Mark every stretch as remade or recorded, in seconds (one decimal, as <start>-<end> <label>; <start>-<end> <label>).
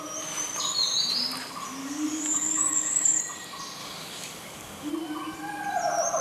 0.0-1.8 recorded; 1.8-3.2 remade; 3.2-3.8 recorded; 3.8-4.9 remade; 4.9-6.2 recorded